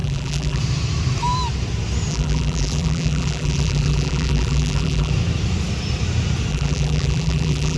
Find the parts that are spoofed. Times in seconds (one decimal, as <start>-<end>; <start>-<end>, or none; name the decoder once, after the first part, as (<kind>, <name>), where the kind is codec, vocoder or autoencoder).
0.0-0.6 (vocoder, BigVGAN v2); 2.1-5.1; 6.5-7.8